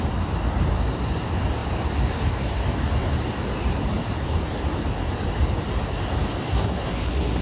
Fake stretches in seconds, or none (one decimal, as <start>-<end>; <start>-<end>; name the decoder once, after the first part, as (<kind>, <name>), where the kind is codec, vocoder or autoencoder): 6.5-7.4 (codec, SNAC)